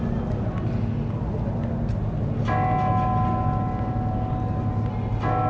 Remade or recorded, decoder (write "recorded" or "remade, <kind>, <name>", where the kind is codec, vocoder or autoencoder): recorded